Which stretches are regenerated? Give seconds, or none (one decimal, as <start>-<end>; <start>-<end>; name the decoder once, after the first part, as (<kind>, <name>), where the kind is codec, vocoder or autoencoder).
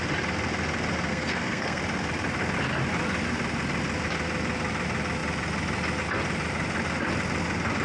1.1-1.8 (codec, SNAC)